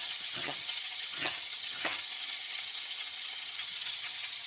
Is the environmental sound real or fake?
fake